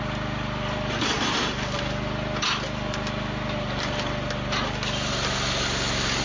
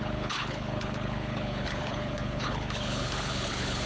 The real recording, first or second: first